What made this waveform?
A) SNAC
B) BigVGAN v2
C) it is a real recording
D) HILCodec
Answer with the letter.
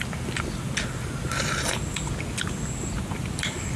C